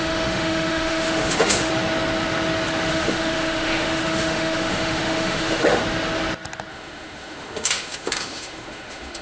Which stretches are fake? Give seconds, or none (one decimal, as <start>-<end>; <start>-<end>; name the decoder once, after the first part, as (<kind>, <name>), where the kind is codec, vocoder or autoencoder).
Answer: 0.0-1.7 (autoencoder, DAC-VAE); 2.9-5.8; 6.7-9.2

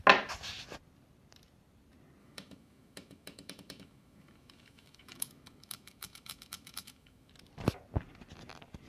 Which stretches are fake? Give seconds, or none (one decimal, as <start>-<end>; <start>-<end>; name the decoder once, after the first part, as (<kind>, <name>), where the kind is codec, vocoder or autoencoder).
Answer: 2.2-7.3 (autoencoder, DAC-VAE)

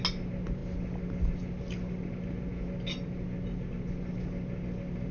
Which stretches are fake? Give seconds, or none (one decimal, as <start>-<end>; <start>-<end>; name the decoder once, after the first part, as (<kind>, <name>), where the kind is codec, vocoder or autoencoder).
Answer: none

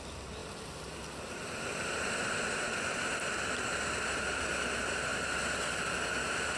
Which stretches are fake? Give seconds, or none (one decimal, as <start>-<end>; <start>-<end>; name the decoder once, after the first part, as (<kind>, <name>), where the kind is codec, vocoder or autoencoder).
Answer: none